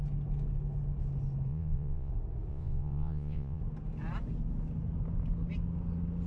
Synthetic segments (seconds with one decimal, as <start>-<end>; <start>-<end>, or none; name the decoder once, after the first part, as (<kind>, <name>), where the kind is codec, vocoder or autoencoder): 1.5-2.1 (vocoder, Vocos); 2.5-3.6

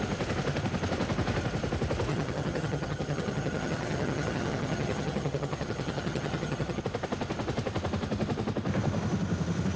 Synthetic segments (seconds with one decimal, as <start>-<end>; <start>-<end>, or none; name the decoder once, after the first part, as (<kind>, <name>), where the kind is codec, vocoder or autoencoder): 2.1-6.8 (vocoder, HiFi-GAN)

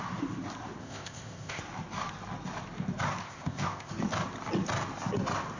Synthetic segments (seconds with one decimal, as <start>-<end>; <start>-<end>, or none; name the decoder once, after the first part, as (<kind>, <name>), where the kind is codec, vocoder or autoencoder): 0.8-1.6 (codec, ZipCodec); 3.2-3.9